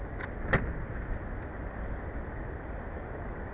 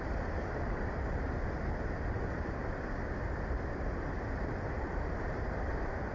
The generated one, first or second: second